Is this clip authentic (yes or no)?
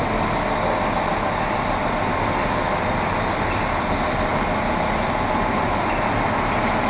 yes